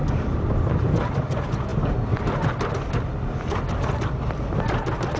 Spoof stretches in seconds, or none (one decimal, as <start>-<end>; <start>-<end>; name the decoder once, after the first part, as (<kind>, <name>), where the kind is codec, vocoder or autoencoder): 0.7-5.2 (vocoder, BigVGAN v2)